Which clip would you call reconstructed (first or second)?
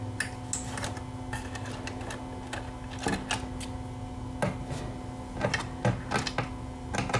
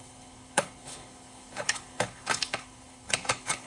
second